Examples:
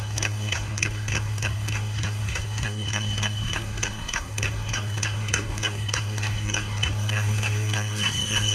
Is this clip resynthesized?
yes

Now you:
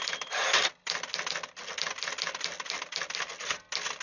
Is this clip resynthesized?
no